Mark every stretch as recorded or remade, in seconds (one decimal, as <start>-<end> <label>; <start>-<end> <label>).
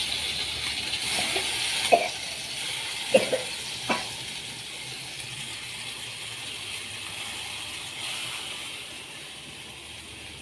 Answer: 0.0-10.4 recorded